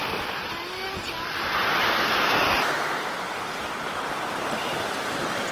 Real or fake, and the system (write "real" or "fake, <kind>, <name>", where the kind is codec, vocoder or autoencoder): real